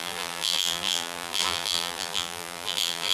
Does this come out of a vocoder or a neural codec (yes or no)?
yes